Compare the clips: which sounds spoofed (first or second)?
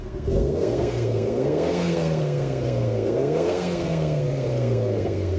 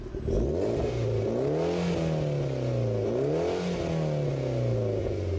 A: first